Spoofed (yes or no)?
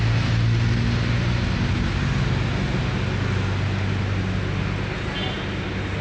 no